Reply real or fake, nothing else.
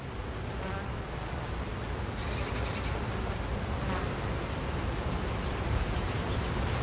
real